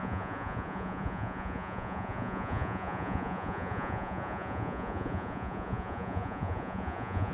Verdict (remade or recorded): remade